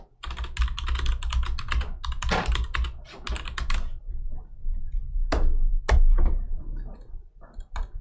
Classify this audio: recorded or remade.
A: recorded